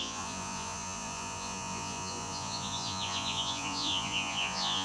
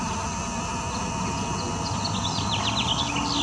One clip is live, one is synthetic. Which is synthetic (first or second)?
first